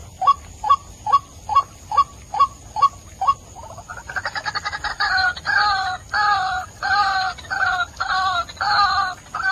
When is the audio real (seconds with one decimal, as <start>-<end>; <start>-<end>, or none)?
0.0-9.5